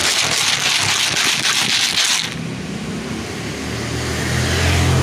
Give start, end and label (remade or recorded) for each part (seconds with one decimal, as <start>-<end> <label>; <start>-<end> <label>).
0.0-5.0 recorded